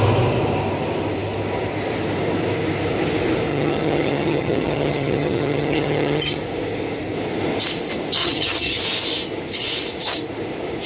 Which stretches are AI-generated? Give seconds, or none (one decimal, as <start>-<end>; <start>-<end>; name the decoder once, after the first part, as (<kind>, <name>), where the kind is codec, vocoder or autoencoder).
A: 3.5-6.4 (vocoder, HiFi-GAN); 8.2-8.8